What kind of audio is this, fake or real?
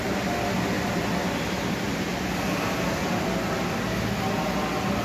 real